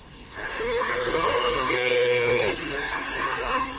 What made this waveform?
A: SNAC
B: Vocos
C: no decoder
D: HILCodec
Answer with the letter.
A